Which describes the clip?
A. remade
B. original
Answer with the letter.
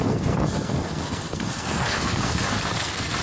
A